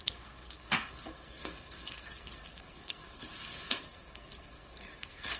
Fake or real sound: fake